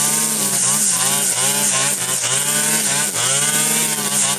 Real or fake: real